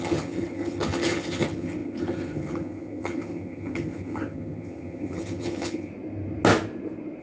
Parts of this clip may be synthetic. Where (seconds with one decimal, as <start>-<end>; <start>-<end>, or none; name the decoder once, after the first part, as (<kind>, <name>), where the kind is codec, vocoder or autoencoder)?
0.0-5.9 (vocoder, HiFi-GAN)